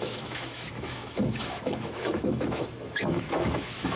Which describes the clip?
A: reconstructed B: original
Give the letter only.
A